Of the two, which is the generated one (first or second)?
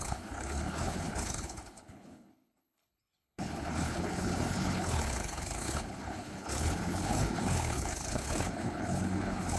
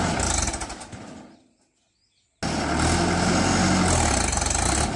first